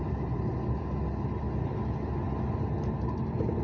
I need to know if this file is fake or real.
real